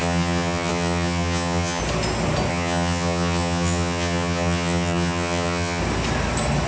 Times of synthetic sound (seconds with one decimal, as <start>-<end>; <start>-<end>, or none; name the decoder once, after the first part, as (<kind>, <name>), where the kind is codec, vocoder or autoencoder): 0.0-1.8 (vocoder, HiFi-GAN); 2.5-5.8